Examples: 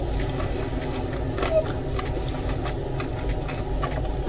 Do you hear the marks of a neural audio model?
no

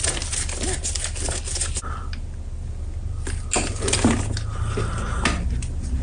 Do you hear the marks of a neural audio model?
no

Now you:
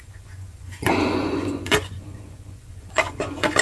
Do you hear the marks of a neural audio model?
yes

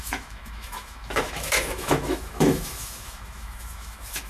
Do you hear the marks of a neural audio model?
yes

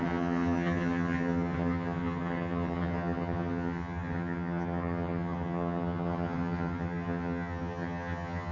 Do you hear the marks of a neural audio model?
yes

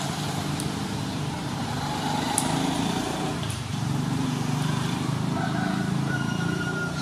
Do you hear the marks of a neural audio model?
yes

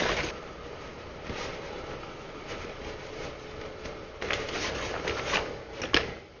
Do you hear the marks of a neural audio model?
no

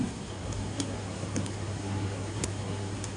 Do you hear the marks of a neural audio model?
yes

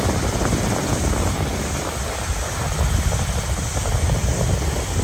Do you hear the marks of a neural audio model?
no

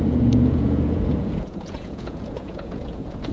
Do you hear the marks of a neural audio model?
yes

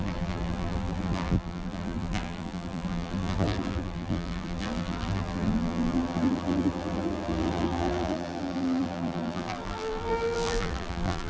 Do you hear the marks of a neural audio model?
yes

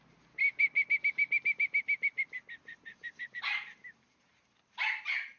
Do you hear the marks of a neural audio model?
no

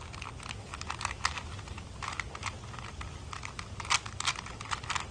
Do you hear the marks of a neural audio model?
no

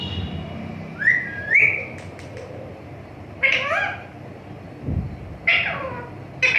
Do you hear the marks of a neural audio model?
no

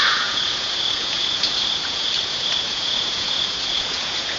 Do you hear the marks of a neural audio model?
yes